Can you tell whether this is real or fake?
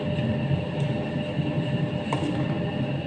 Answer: real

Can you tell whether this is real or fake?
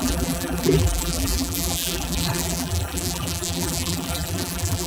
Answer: fake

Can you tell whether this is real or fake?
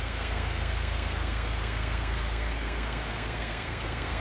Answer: fake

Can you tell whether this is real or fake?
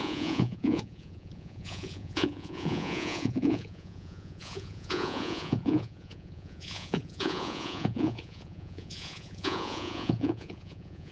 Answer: fake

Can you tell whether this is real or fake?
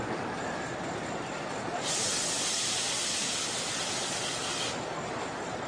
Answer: real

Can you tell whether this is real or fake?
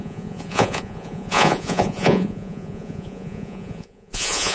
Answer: fake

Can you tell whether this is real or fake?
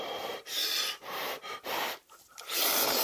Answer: fake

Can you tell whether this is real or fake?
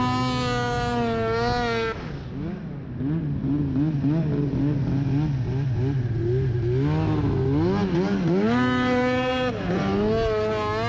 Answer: real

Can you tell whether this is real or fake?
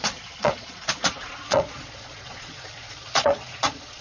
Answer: fake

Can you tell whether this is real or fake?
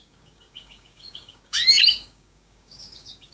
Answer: fake